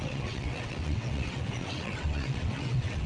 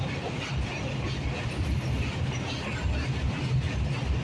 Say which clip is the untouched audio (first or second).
second